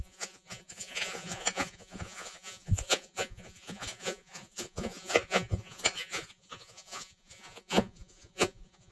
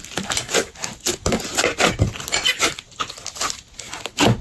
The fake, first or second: first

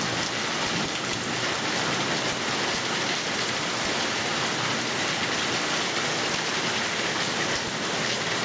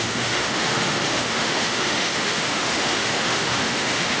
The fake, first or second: second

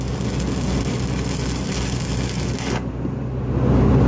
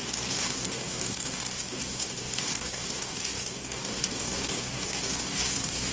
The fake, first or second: second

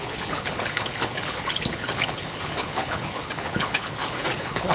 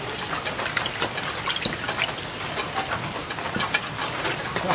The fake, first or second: first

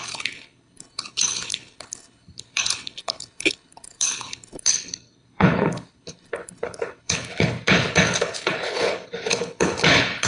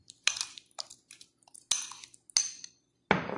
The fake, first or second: first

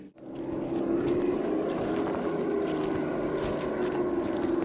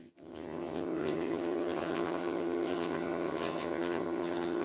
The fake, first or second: second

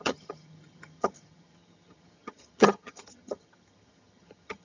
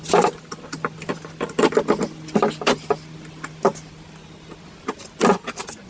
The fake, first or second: first